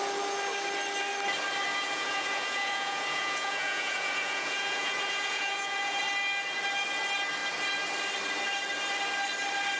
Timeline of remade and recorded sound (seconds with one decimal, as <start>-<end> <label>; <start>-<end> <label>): 0.0-1.7 recorded; 1.7-6.0 remade; 6.0-9.8 recorded